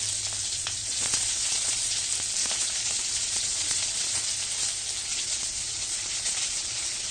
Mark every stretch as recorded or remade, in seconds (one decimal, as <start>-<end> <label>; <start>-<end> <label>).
0.0-0.4 recorded; 0.4-2.0 remade; 2.0-2.4 recorded; 2.4-4.4 remade; 4.4-5.1 recorded; 5.1-7.1 remade